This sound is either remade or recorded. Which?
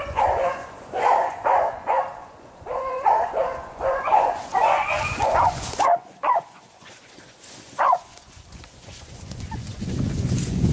remade